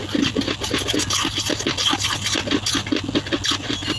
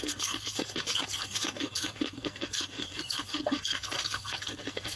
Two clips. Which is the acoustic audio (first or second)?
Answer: first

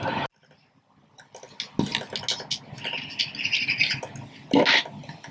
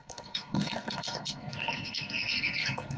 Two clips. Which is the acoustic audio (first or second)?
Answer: first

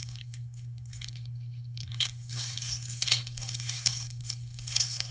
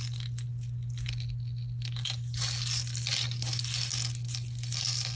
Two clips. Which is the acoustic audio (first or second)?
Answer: second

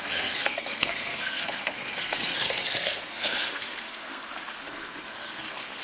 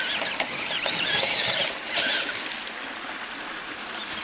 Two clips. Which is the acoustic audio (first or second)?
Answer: second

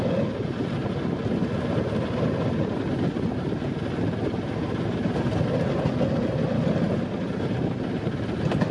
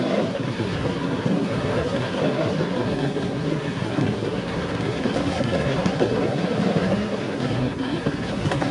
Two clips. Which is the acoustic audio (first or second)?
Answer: first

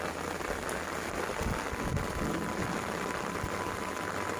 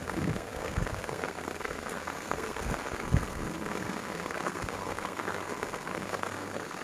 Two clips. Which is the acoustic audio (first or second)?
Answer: first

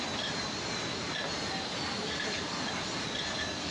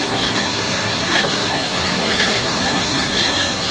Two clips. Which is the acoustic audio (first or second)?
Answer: first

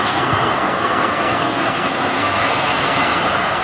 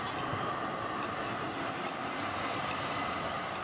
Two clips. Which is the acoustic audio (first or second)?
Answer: second